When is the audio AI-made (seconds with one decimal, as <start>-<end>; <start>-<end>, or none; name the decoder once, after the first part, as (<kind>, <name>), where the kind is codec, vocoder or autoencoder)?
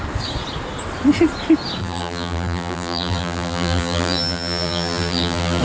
1.8-5.6 (vocoder, BigVGAN v2)